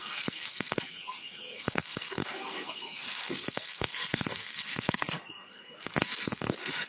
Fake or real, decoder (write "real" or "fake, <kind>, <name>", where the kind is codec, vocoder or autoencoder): fake, codec, SNAC